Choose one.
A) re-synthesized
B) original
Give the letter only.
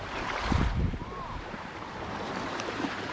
A